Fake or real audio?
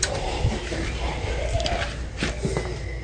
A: real